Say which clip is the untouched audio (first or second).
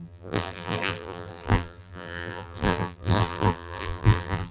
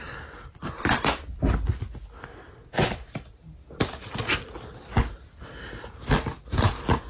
second